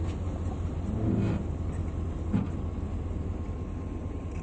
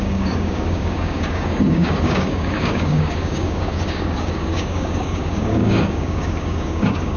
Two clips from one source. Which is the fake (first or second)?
second